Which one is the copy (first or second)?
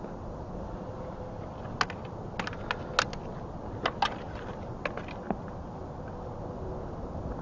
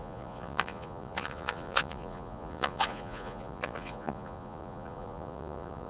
second